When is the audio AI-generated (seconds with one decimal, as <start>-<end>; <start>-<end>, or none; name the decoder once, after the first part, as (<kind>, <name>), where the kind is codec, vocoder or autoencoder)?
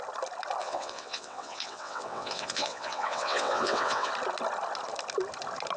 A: 0.6-4.1 (vocoder, WaveNeXt)